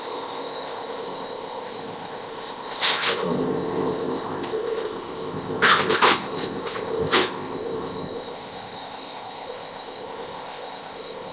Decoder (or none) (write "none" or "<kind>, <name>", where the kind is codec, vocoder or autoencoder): codec, ZipCodec